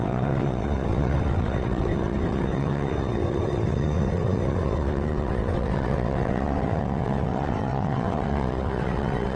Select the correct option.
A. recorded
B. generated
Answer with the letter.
B